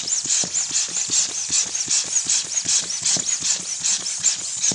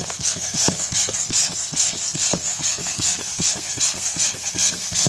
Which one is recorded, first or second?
first